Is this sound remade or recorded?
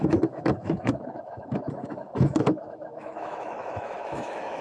remade